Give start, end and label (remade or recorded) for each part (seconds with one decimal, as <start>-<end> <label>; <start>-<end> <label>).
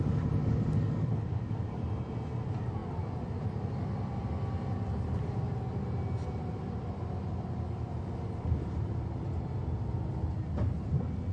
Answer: 0.0-0.4 recorded; 0.4-1.8 remade; 1.8-11.3 recorded